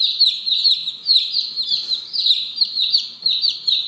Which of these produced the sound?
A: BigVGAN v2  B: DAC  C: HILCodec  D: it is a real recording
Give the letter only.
A